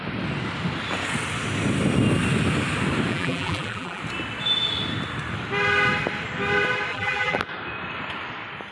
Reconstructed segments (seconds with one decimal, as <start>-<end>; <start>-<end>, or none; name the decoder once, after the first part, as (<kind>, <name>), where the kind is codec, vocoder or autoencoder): 3.1-4.0 (vocoder, BigVGAN v2); 6.9-7.4